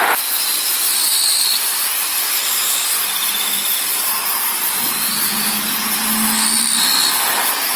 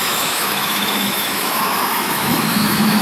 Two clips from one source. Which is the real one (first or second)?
first